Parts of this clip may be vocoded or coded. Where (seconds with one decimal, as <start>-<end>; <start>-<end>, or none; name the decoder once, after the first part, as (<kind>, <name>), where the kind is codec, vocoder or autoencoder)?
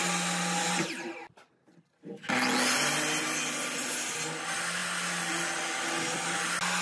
none